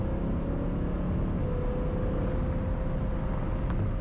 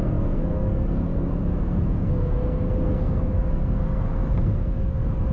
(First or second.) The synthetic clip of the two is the second